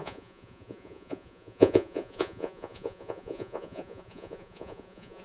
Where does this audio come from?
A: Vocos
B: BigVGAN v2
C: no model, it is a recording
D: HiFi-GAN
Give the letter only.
A